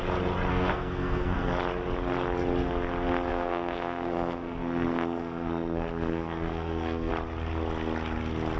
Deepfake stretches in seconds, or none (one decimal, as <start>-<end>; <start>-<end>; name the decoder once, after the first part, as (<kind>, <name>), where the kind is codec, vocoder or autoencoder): 0.5-1.6 (codec, SNAC); 3.3-7.1